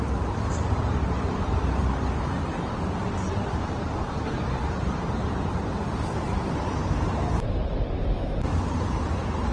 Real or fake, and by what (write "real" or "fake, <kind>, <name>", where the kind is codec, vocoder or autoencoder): fake, vocoder, BigVGAN v2